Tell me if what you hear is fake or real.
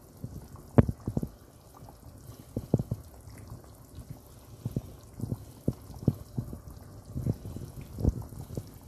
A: real